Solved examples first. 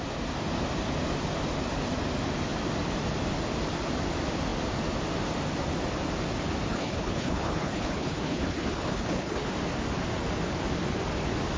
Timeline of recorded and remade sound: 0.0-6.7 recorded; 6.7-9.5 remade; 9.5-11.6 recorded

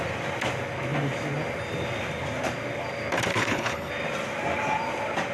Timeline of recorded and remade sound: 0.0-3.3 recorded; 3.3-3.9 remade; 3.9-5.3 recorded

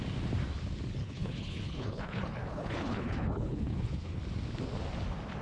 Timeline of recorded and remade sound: 0.0-1.0 recorded; 1.0-4.2 remade; 4.2-5.4 recorded